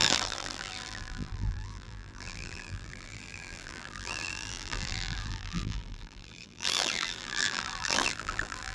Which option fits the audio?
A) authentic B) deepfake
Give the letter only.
B